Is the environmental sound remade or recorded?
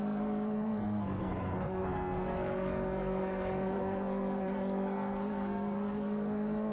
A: remade